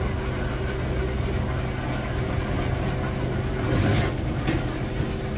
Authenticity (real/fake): real